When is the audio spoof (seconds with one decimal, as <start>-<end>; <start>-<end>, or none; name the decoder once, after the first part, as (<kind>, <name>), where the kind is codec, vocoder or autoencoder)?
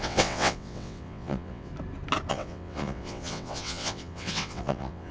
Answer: 0.0-1.7 (vocoder, WaveNeXt); 2.3-5.1